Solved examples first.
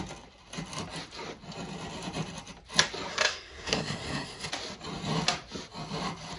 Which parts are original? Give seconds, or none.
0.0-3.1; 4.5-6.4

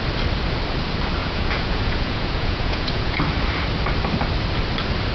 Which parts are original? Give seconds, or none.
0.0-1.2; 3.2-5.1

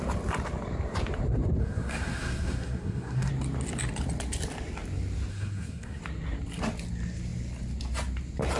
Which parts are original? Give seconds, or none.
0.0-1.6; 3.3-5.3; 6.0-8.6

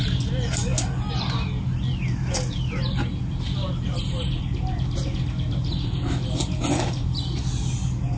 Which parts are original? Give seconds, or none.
0.0-8.2

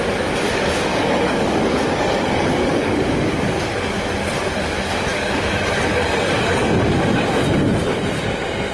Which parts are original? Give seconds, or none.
0.0-0.9; 3.6-5.1; 7.3-8.7